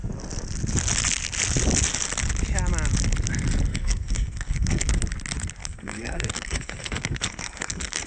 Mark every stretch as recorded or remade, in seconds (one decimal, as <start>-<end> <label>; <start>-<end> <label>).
0.0-3.7 recorded; 3.7-4.9 remade; 4.9-5.6 recorded; 5.6-8.1 remade